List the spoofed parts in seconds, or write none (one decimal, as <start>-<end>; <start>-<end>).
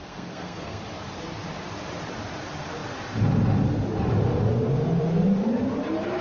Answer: 0.0-0.8